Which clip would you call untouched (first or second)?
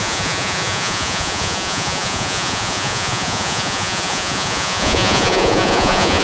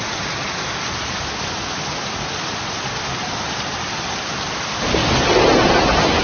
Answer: second